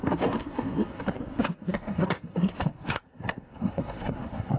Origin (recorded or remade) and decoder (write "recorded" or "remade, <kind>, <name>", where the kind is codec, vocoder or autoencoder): remade, codec, SNAC